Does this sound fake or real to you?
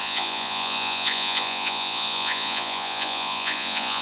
fake